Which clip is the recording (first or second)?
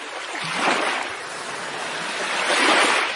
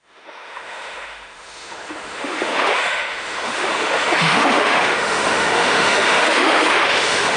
first